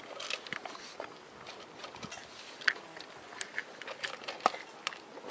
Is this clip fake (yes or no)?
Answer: no